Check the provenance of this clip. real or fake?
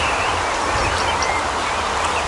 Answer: real